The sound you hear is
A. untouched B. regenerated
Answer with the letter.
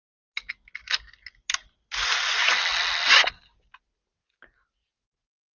A